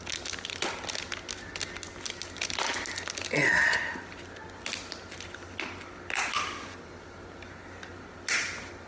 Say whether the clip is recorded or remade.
recorded